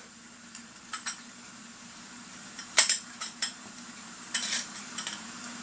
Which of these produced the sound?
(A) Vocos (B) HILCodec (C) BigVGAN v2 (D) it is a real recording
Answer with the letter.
C